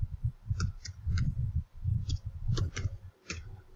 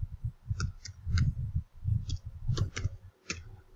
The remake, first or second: first